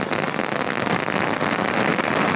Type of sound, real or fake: real